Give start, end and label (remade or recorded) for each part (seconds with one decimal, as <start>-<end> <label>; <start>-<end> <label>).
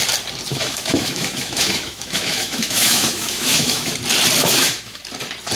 0.0-0.5 recorded; 0.5-3.9 remade; 3.9-4.4 recorded; 4.4-5.0 remade; 5.0-5.6 recorded